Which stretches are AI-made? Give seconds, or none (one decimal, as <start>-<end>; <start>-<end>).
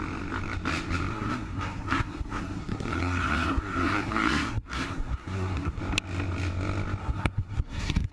1.1-5.8; 7.0-8.1